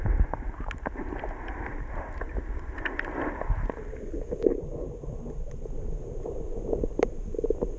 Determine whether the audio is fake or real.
real